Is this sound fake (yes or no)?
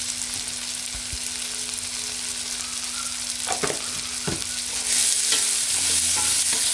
no